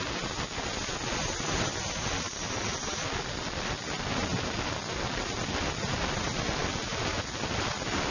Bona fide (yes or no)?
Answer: yes